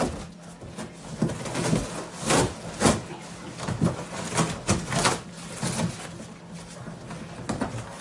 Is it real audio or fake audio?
real